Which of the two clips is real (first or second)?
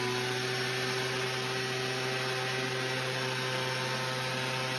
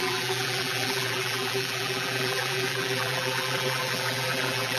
first